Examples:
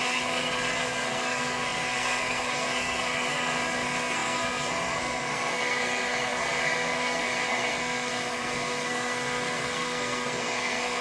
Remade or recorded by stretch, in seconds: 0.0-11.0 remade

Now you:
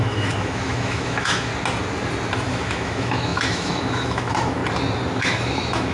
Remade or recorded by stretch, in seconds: 0.0-1.5 remade; 1.5-2.5 recorded; 2.5-4.6 remade; 4.6-5.2 recorded; 5.2-5.9 remade

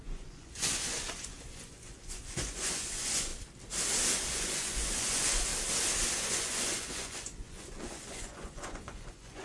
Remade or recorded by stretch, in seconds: 0.0-3.3 remade; 3.3-4.3 recorded; 4.3-5.5 remade; 5.5-6.2 recorded; 6.2-9.4 remade